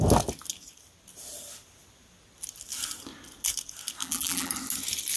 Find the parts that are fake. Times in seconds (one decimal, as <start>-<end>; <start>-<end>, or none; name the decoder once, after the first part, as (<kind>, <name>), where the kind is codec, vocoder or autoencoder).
4.0-4.5 (vocoder, BigVGAN v2)